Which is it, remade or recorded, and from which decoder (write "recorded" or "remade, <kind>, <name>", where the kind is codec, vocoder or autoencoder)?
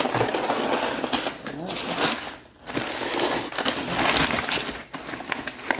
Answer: recorded